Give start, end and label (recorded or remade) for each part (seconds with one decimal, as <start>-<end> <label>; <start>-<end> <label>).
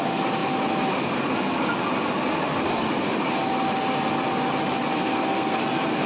0.0-5.1 recorded; 5.1-5.6 remade; 5.6-6.1 recorded